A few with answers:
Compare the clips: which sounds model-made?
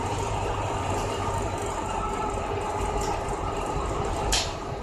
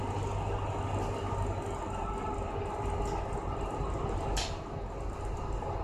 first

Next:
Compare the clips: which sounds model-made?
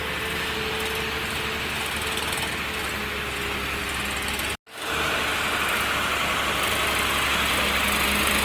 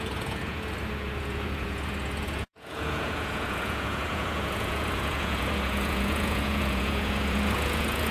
second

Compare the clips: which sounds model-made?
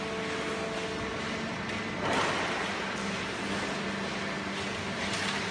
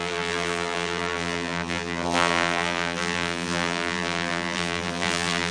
second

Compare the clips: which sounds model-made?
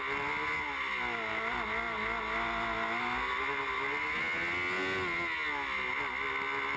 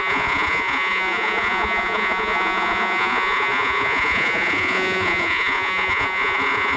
second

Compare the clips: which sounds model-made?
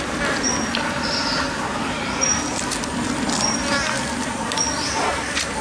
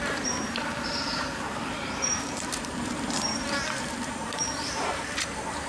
second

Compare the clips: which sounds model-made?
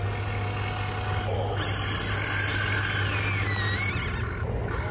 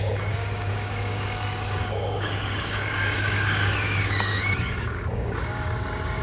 second